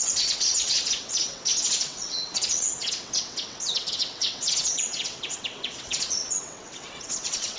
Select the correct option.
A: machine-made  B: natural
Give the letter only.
A